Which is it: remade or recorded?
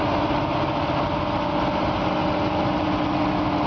recorded